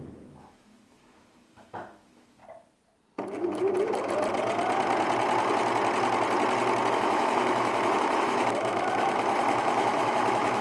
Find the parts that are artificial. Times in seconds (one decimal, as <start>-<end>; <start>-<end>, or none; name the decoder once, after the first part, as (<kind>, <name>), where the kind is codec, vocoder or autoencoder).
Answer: 0.0-2.4 (autoencoder, DAC-VAE); 6.9-10.6